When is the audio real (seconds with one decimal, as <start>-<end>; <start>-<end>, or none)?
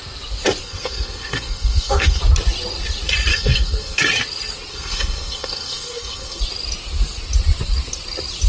0.0-0.6; 2.2-3.3; 4.0-4.7; 6.4-8.5